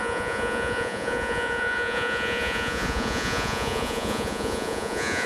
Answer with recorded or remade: remade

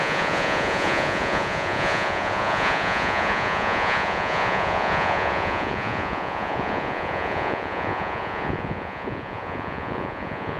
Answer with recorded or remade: remade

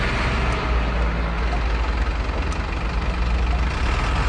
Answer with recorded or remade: recorded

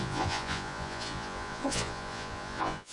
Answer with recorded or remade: remade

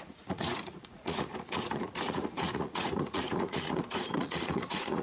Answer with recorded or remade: remade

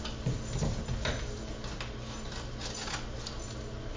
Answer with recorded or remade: recorded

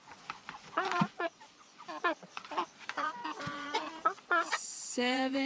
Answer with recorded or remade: remade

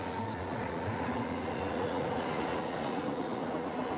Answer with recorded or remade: remade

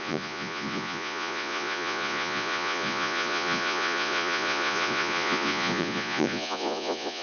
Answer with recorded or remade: remade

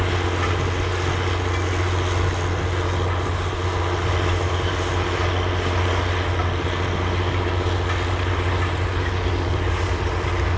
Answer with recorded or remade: recorded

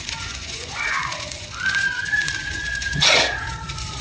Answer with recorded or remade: remade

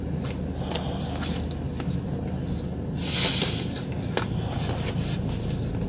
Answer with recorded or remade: recorded